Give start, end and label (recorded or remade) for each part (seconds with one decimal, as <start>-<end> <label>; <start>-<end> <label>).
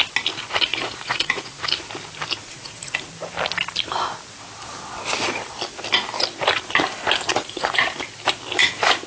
0.0-0.7 recorded; 0.7-1.6 remade; 1.6-2.4 recorded; 2.4-3.1 remade; 3.1-7.3 recorded; 7.3-7.8 remade; 7.8-9.1 recorded